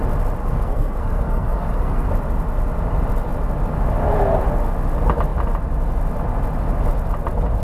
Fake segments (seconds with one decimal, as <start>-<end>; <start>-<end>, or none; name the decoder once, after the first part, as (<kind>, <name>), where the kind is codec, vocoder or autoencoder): 0.4-2.1 (codec, SNAC)

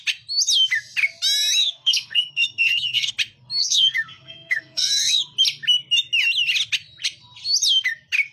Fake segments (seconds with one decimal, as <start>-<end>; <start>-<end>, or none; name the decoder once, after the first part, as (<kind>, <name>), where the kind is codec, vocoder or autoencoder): 1.6-3.1 (codec, SNAC); 3.6-5.2

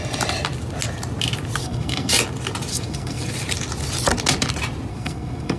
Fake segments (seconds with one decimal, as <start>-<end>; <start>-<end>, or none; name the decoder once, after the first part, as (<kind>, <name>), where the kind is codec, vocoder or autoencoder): 1.6-2.1 (codec, SNAC); 2.7-3.3; 4.9-5.6